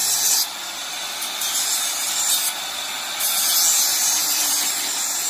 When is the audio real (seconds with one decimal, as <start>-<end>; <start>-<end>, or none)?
3.2-3.9